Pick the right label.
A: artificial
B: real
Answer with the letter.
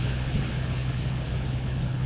A